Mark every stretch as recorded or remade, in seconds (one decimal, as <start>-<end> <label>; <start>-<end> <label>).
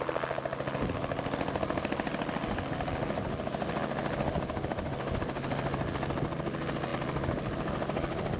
0.0-8.4 recorded